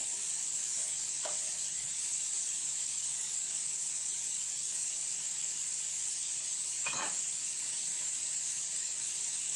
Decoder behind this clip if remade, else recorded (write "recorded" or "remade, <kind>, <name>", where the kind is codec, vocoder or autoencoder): remade, codec, DAC